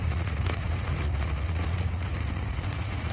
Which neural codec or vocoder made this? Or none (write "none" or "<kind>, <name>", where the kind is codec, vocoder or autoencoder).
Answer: vocoder, Vocos